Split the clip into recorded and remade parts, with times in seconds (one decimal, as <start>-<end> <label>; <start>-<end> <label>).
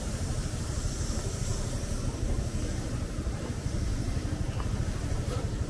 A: 0.0-1.5 remade; 1.5-2.1 recorded; 2.1-3.9 remade; 3.9-4.8 recorded; 4.8-5.7 remade